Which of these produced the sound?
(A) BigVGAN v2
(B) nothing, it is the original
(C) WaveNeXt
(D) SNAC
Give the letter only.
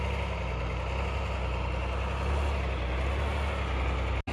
B